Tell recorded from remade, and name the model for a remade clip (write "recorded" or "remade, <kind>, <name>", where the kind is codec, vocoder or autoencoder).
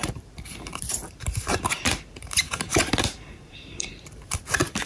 remade, vocoder, BigVGAN v2